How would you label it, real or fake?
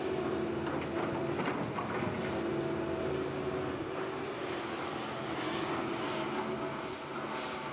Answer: real